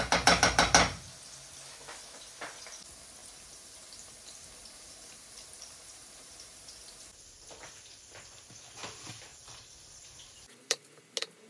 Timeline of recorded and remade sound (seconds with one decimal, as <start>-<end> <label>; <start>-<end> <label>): 0.0-3.2 recorded; 3.2-7.0 remade; 7.0-9.3 recorded; 9.3-11.0 remade; 11.0-11.5 recorded